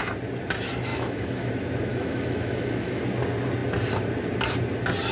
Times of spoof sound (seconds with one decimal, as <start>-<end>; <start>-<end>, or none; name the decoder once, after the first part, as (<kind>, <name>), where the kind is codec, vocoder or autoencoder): 0.9-1.5 (autoencoder, DAC-VAE); 1.9-3.0